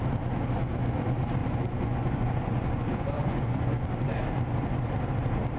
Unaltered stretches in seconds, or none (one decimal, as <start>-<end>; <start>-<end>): 0.0-1.4; 3.9-5.6